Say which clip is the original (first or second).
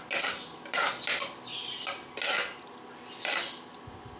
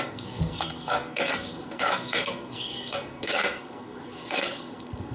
first